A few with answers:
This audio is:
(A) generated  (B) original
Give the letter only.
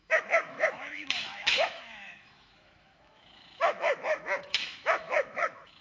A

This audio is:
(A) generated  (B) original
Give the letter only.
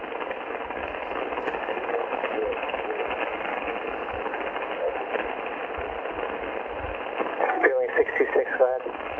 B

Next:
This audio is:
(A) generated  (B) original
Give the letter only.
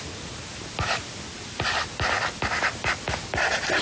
B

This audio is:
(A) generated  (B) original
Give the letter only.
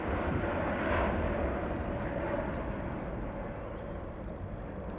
B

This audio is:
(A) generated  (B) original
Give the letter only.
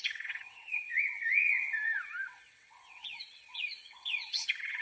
A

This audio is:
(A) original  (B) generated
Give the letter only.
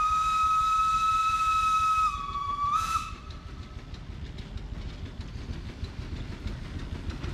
A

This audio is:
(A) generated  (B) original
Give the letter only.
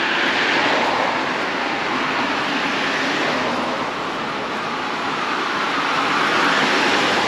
B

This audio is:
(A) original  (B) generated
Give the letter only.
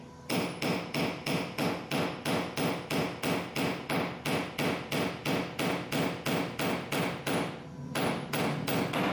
A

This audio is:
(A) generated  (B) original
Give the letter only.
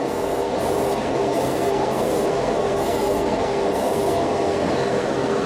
A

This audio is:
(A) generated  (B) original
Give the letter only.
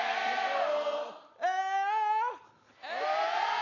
B